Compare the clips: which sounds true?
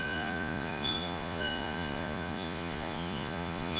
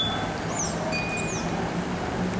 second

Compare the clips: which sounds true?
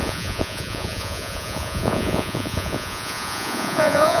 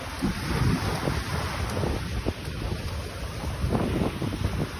second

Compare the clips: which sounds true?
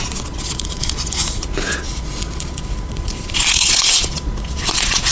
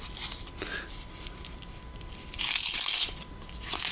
second